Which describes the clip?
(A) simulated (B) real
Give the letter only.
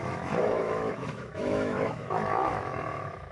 A